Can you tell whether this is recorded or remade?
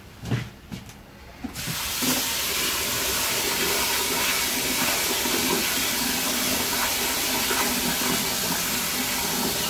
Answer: recorded